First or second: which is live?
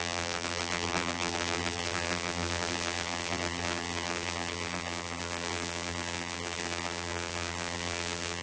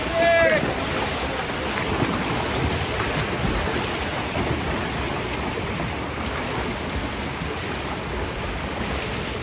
second